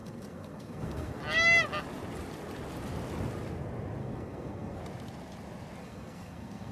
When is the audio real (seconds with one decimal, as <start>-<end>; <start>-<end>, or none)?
1.2-4.0; 4.8-5.8